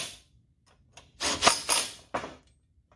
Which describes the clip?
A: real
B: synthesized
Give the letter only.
A